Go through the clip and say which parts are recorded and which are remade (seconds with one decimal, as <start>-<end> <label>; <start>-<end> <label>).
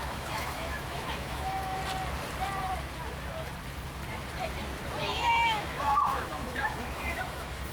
0.0-1.8 remade; 1.8-5.0 recorded; 5.0-7.7 remade